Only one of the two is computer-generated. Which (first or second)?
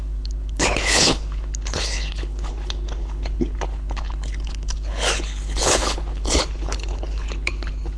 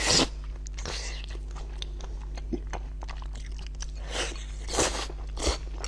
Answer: first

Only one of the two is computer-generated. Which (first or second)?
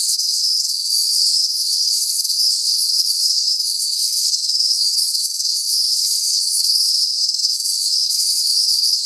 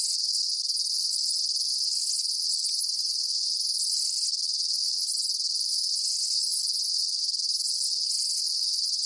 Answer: first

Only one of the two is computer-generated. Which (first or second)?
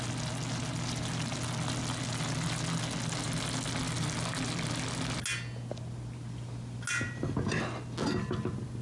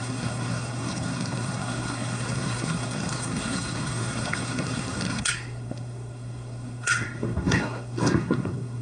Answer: second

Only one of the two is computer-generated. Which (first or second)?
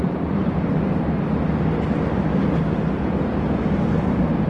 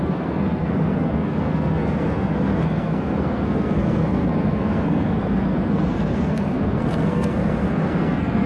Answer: second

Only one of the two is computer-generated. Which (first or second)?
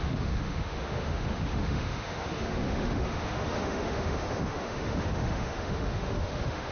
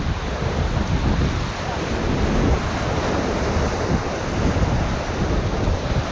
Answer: first